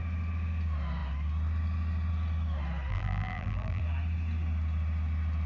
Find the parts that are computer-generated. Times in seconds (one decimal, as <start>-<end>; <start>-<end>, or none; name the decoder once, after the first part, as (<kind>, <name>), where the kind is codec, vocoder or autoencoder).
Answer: 2.9-3.8 (vocoder, BigVGAN v2)